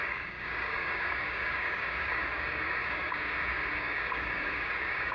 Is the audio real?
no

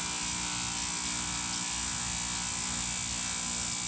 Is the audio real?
yes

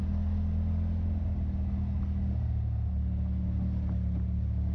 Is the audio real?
yes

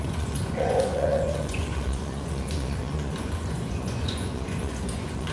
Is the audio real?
no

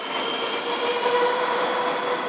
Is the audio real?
yes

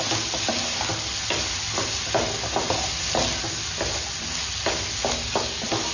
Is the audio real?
yes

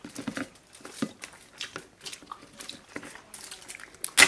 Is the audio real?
yes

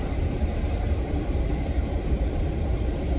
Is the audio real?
no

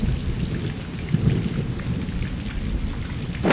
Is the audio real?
yes